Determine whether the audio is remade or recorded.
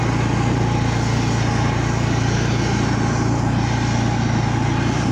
recorded